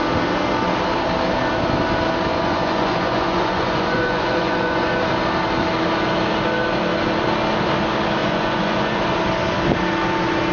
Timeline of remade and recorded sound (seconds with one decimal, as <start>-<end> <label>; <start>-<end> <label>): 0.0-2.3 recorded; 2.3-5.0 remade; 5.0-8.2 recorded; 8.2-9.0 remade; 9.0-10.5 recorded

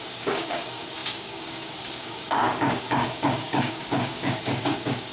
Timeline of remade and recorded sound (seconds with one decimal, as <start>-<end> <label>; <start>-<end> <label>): 0.0-5.1 remade

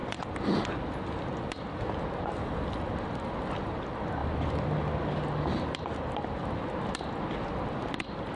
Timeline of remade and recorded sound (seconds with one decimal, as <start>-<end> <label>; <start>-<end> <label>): 0.0-8.4 recorded

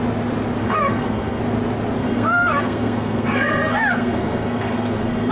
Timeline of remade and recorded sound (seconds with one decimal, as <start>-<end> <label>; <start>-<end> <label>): 0.0-0.6 recorded; 0.6-1.4 remade; 1.4-2.0 recorded; 2.0-5.3 remade

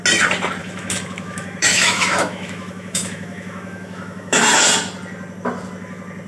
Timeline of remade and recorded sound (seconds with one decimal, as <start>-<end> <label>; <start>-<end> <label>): 0.0-0.6 recorded; 0.6-4.4 remade; 4.4-6.3 recorded

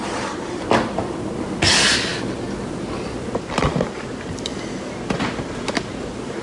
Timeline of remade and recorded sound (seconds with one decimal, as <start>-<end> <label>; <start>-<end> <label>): 0.0-6.4 recorded

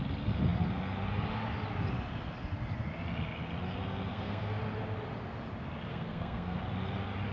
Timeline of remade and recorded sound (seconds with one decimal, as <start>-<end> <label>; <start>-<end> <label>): 0.0-4.1 recorded; 4.1-4.6 remade; 4.6-5.9 recorded; 5.9-6.6 remade; 6.6-7.3 recorded